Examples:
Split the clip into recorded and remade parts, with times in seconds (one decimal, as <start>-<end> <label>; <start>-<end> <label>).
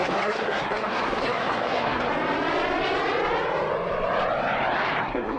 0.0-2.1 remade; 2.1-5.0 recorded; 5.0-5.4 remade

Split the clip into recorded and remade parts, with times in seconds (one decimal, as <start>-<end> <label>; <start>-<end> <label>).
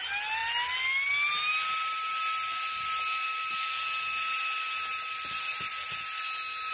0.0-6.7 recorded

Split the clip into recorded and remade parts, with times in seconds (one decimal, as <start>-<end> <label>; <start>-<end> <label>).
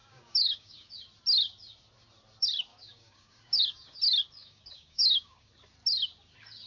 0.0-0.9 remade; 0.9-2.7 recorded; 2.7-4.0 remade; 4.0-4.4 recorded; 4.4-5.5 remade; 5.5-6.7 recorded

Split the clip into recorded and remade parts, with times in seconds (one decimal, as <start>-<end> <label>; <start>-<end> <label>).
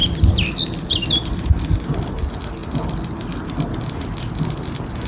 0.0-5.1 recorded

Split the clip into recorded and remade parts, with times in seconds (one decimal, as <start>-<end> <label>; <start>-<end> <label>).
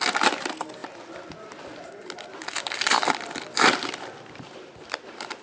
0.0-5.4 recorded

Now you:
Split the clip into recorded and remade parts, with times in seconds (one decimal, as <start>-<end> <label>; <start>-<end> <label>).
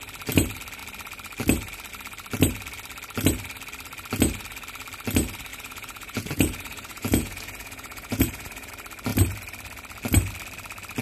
0.0-5.5 recorded; 5.5-8.7 remade; 8.7-11.0 recorded